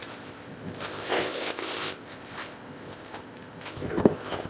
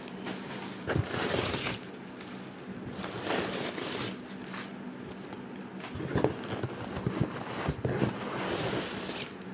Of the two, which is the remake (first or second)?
first